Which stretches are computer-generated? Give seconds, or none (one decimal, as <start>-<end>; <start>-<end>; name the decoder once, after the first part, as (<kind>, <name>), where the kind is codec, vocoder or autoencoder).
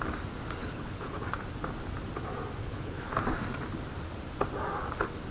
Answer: 0.6-1.2 (codec, HILCodec); 2.6-3.1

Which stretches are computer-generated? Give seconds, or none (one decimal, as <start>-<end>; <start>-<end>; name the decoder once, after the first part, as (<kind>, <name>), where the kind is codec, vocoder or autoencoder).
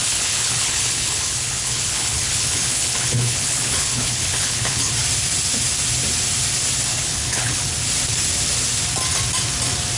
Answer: 0.0-4.9 (codec, HILCodec); 6.9-7.6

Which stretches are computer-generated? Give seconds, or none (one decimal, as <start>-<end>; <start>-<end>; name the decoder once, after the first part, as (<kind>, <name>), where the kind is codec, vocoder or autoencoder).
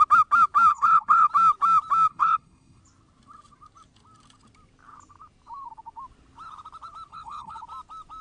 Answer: 0.7-1.3 (codec, HILCodec); 2.1-2.8; 7.1-7.6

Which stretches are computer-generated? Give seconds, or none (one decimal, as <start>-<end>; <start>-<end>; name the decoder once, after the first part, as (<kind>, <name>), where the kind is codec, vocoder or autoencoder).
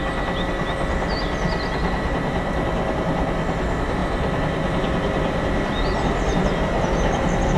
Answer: none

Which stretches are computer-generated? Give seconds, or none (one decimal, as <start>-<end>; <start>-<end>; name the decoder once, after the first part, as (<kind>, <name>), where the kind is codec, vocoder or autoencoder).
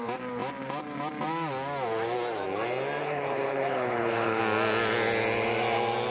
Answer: 3.0-4.4 (codec, HILCodec)